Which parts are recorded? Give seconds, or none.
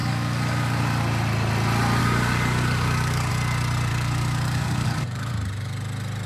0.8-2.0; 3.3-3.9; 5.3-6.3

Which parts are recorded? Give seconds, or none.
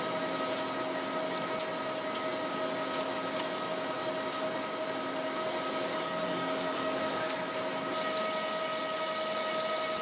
0.0-5.9; 7.5-10.0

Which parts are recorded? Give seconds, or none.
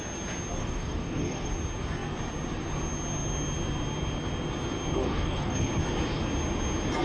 0.0-0.6; 1.5-5.0; 5.7-7.0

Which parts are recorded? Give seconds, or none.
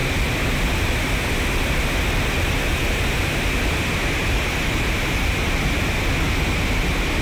0.0-7.2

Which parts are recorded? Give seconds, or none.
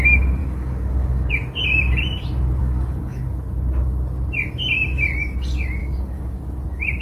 0.0-0.4; 1.3-2.6; 3.2-5.8; 6.4-7.0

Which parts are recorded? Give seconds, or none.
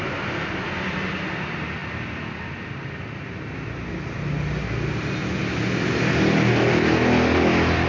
0.0-7.9